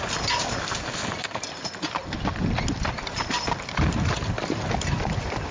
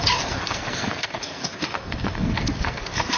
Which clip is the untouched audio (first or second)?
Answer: first